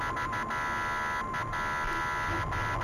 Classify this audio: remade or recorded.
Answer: recorded